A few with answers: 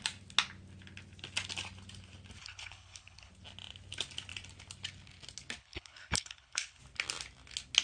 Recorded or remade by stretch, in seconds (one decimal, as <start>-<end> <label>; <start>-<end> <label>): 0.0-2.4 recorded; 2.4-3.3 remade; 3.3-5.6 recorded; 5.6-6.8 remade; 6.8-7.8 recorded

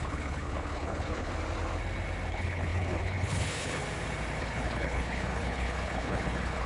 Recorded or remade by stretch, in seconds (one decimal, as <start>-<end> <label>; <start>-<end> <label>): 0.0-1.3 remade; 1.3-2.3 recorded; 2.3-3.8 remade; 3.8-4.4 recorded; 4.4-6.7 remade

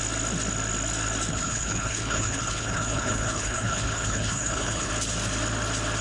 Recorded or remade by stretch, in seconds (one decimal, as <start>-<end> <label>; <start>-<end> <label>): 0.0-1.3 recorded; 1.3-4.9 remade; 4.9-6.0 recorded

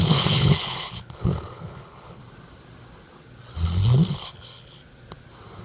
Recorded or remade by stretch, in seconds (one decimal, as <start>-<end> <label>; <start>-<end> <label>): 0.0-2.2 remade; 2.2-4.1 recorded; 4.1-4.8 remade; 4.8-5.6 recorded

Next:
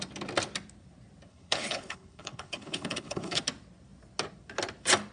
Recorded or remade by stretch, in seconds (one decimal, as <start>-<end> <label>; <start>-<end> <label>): 0.0-1.3 recorded; 1.3-3.4 remade; 3.4-5.1 recorded

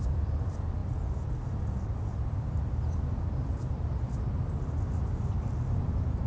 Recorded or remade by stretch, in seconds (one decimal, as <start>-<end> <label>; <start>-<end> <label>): 0.0-6.3 recorded